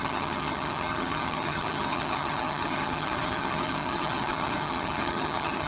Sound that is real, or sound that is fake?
fake